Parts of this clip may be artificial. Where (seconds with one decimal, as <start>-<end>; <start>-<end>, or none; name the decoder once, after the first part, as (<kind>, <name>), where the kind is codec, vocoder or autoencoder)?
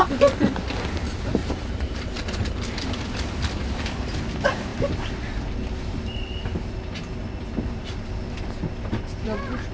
1.4-3.6 (vocoder, BigVGAN v2)